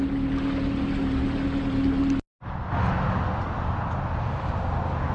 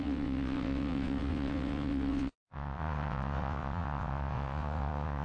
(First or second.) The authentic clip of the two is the first